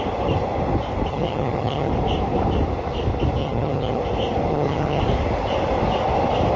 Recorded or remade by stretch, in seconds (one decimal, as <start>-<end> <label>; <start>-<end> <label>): 0.0-1.1 recorded; 1.1-1.9 remade; 1.9-3.4 recorded; 3.4-4.0 remade; 4.0-4.5 recorded; 4.5-5.0 remade; 5.0-6.6 recorded